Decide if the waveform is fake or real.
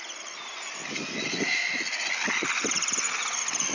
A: real